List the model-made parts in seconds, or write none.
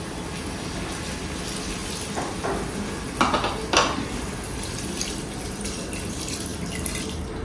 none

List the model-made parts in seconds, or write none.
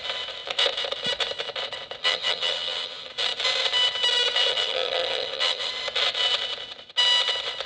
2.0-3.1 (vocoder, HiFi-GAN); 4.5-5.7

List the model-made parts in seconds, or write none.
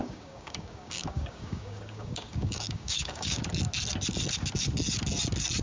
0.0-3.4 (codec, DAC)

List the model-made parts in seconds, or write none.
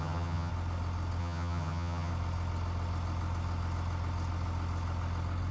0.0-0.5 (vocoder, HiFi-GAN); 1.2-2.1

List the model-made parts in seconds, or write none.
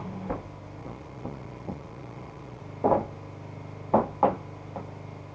0.8-2.6 (vocoder, Vocos)